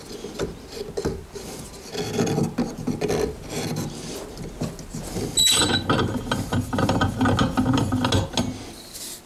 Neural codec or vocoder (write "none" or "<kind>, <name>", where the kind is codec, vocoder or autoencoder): none